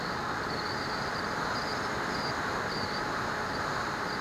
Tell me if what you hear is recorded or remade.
recorded